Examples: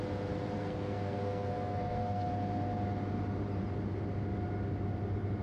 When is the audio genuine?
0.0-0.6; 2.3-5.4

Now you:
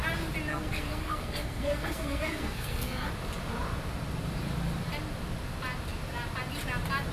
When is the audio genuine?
0.0-0.5; 3.1-7.1

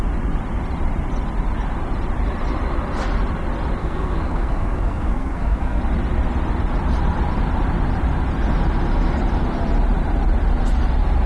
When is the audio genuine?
0.0-3.8; 5.8-11.3

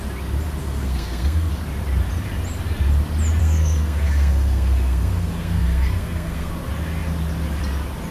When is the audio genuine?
0.0-0.6; 1.5-3.4; 6.5-8.1

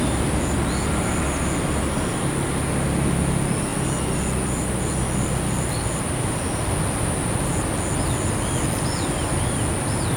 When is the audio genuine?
0.0-10.2

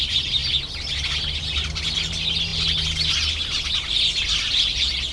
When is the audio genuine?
0.0-5.1